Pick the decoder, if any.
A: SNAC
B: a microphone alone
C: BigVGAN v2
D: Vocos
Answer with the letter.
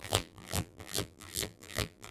C